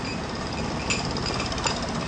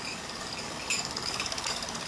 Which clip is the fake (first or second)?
second